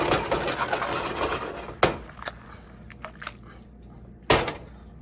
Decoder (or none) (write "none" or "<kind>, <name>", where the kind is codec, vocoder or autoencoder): none